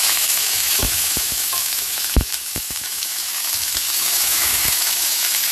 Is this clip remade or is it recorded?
remade